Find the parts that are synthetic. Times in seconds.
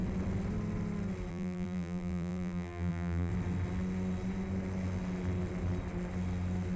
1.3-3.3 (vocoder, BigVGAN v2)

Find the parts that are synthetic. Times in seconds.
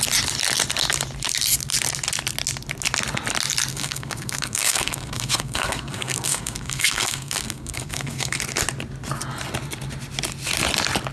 3.7-8.4 (codec, SNAC)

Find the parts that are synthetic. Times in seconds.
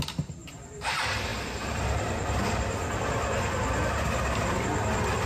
0.4-0.9 (vocoder, BigVGAN v2)